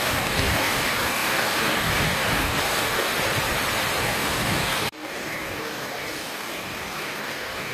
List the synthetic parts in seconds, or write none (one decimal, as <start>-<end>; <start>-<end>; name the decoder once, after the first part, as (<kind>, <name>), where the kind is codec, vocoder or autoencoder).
0.0-3.1 (codec, DAC); 4.0-7.7